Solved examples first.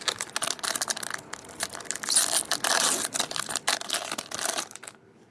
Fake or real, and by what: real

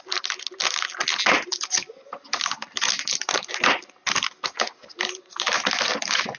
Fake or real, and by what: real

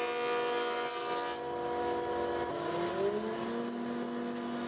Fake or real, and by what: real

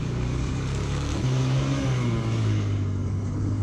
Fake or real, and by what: fake, codec, DAC